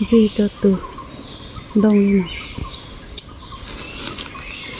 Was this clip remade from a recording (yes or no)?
no